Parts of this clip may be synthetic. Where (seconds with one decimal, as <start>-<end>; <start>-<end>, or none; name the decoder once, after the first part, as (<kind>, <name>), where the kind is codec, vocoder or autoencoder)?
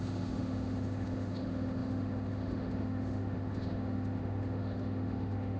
0.0-5.6 (autoencoder, DAC-VAE)